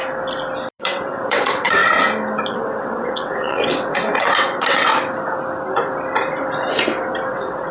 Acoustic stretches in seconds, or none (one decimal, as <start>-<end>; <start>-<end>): 0.0-0.8; 1.8-2.5; 4.9-7.3